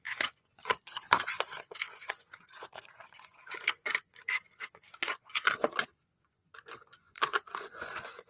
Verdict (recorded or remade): remade